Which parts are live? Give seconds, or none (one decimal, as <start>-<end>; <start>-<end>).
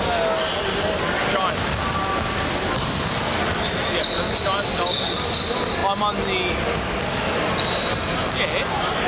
0.0-9.1